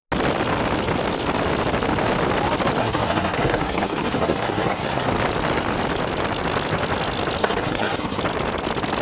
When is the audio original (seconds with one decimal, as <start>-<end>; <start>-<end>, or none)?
0.0-2.8; 5.1-7.4; 8.2-9.0